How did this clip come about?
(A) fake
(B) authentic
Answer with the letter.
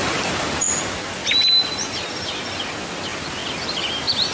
B